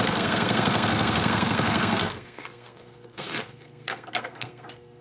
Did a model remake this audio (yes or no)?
yes